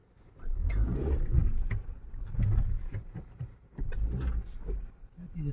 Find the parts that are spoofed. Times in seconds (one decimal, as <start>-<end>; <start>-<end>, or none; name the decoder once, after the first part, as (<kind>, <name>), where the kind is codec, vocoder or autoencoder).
none